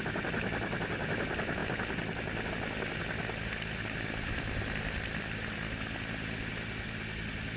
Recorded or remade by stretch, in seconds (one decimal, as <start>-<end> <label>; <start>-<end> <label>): 0.0-7.6 recorded